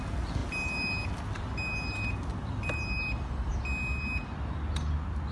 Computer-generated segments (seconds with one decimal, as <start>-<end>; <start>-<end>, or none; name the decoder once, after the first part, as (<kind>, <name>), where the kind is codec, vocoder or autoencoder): none